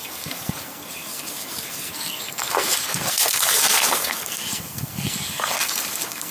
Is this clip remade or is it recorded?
remade